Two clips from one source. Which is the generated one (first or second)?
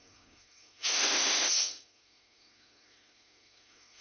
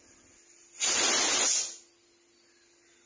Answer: first